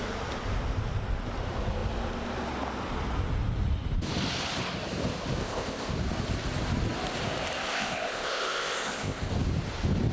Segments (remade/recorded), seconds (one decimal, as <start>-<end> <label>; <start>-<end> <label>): 0.0-5.4 recorded; 5.4-5.9 remade; 5.9-7.7 recorded; 7.7-9.3 remade; 9.3-10.1 recorded